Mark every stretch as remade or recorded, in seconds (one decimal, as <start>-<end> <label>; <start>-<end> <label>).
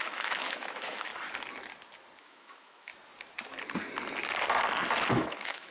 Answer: 0.0-1.1 remade; 1.1-2.2 recorded; 2.2-2.9 remade; 2.9-5.1 recorded; 5.1-5.7 remade